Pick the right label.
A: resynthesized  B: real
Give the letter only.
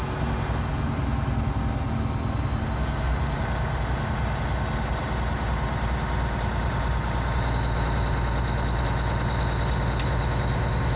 B